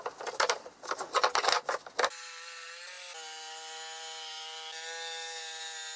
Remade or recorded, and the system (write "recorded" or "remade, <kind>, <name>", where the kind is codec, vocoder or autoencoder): recorded